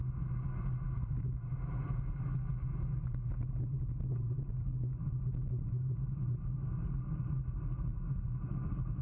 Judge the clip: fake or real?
real